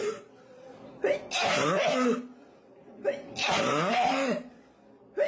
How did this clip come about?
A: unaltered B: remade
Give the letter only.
A